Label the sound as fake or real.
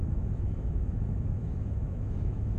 fake